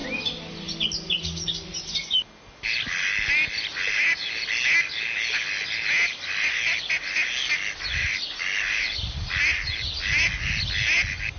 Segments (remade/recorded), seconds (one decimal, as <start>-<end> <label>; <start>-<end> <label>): 0.0-11.4 recorded